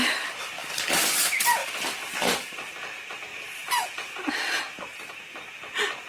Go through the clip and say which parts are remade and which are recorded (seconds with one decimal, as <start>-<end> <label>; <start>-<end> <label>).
0.0-1.6 recorded; 1.6-2.7 remade; 2.7-6.1 recorded